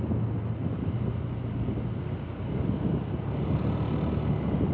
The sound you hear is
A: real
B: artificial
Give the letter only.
A